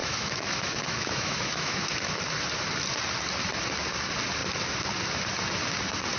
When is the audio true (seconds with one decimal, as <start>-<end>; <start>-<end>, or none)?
2.2-6.2